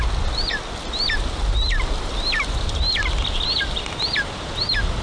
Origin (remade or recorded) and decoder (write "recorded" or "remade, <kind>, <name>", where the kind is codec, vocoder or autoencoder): recorded